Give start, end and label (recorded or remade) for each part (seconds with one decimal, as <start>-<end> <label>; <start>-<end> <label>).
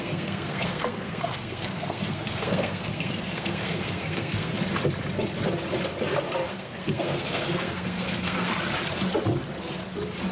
0.0-4.5 remade; 4.5-6.5 recorded; 6.5-8.5 remade; 8.5-10.3 recorded